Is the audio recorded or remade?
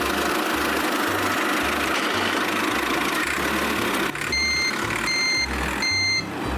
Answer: recorded